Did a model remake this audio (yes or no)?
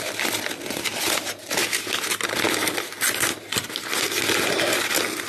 no